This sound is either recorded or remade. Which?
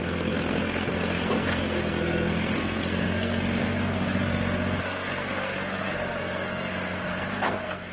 remade